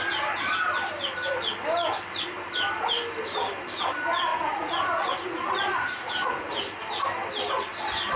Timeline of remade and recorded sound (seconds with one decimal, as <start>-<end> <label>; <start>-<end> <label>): 0.0-4.3 recorded; 4.3-6.5 remade; 6.5-8.2 recorded

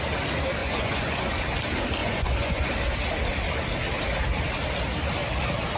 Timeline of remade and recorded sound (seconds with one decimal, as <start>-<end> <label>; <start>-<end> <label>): 0.0-0.6 recorded; 0.6-1.3 remade; 1.3-2.0 recorded; 2.0-2.7 remade; 2.7-5.8 recorded